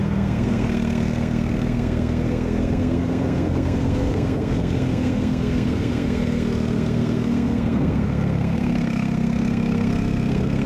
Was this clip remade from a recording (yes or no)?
yes